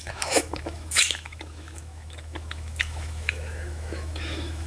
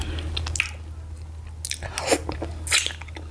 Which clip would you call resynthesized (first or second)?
first